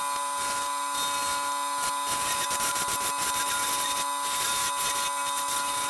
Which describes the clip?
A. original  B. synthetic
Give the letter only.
A